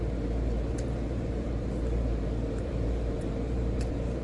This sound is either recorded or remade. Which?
remade